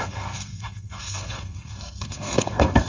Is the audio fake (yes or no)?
yes